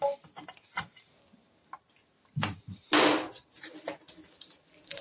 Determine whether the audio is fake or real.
real